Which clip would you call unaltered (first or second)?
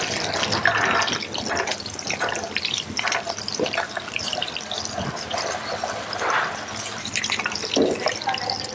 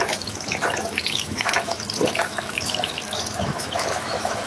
first